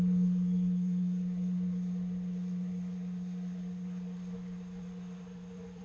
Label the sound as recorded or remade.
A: remade